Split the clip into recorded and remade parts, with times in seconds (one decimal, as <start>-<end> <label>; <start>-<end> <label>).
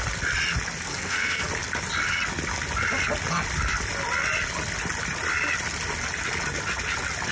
0.0-0.9 recorded; 0.9-1.5 remade; 1.5-7.3 recorded